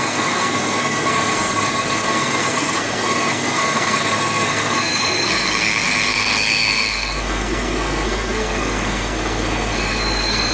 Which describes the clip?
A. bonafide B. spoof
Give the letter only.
B